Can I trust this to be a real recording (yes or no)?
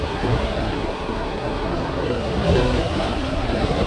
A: no